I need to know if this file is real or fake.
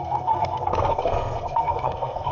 fake